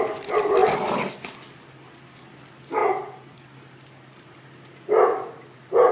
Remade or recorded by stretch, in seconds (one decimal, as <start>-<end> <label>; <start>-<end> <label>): 0.0-5.9 recorded